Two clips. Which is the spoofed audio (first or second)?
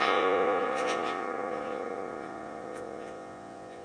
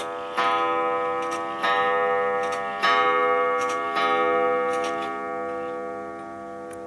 first